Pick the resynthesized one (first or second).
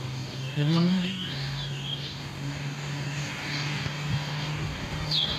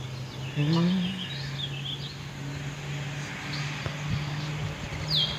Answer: first